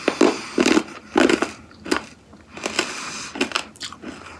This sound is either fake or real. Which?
real